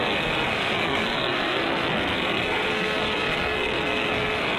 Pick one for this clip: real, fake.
fake